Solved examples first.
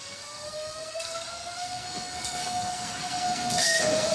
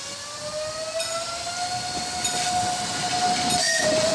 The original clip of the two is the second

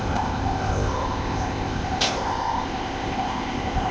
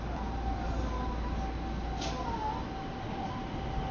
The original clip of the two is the second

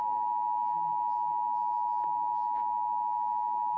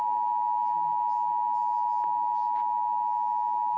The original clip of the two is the second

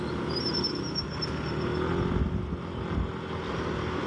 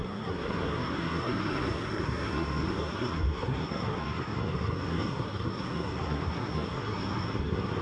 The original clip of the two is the first